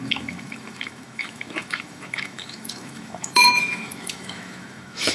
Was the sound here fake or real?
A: fake